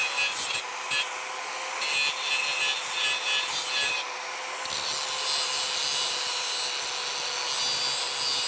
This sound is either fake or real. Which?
real